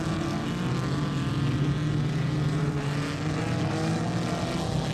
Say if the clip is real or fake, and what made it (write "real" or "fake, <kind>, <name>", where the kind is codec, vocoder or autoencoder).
real